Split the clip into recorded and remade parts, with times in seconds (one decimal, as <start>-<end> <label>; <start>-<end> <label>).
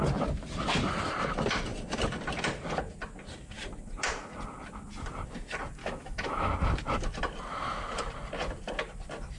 0.0-5.8 recorded; 5.8-6.5 remade; 6.5-9.4 recorded